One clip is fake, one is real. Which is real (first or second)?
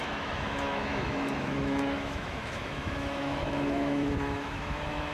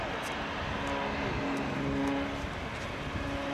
second